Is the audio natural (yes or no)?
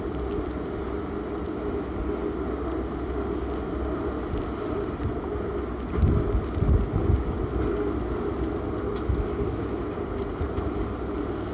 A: yes